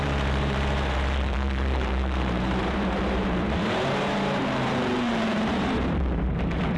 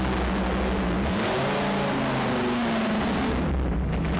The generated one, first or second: first